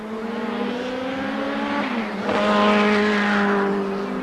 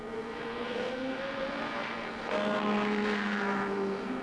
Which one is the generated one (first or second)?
second